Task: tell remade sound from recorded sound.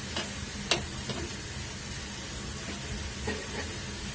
recorded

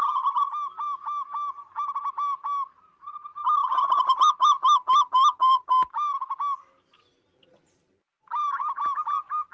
recorded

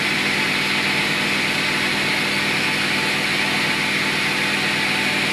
recorded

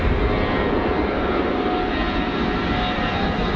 recorded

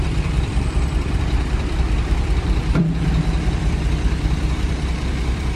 remade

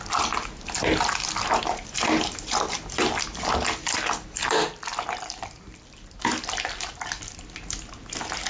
recorded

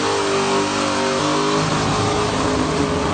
recorded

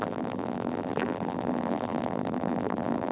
remade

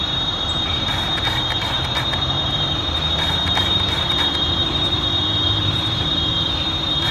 remade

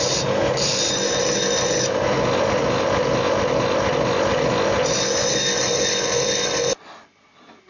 recorded